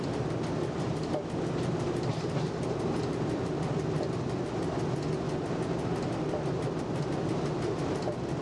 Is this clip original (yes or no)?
yes